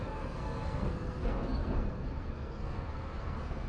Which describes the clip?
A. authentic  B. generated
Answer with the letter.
B